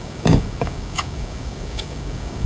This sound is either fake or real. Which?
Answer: fake